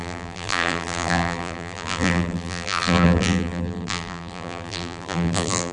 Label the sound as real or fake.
fake